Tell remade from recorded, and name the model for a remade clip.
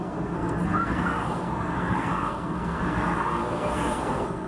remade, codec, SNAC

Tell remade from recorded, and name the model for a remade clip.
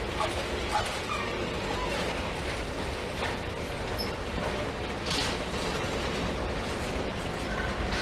recorded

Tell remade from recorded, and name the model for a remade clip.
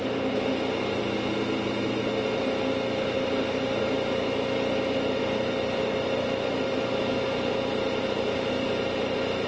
recorded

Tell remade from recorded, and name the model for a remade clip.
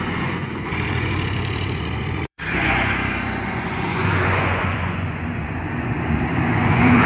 remade, vocoder, Vocos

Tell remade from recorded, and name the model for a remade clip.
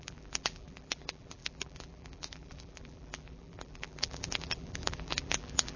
remade, vocoder, BigVGAN v2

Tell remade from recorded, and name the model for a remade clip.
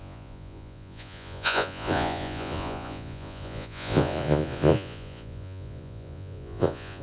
remade, vocoder, Vocos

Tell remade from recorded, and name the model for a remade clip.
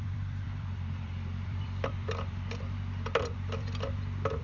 remade, vocoder, BigVGAN v2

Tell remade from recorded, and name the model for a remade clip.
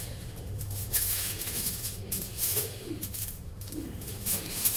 remade, autoencoder, DAC-VAE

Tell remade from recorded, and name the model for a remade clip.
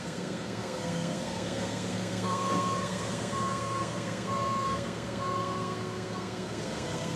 remade, codec, SNAC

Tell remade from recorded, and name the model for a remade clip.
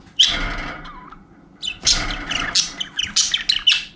recorded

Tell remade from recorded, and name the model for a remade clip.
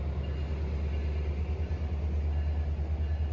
recorded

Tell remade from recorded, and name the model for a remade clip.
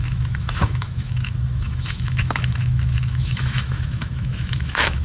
remade, autoencoder, DAC-VAE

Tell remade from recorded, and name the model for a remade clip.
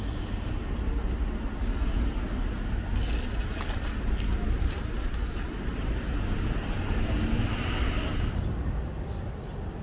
recorded